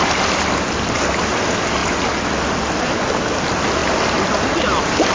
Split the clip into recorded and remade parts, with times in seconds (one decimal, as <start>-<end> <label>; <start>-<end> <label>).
0.0-5.1 recorded